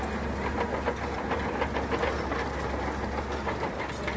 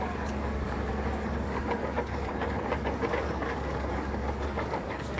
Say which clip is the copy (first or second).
second